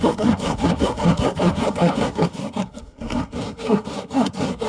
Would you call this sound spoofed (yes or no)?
yes